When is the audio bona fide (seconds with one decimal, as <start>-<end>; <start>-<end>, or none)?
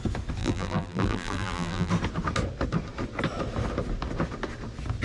0.0-0.4; 1.9-5.0